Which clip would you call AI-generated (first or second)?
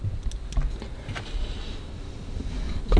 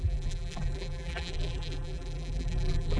second